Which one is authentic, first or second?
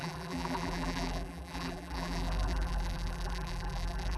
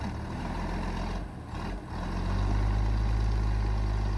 second